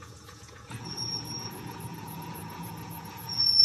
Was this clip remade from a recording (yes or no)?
yes